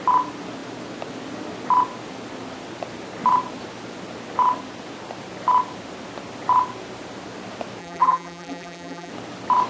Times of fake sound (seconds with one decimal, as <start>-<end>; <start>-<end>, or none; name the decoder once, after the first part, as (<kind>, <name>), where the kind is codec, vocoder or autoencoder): 7.8-9.1 (vocoder, BigVGAN v2)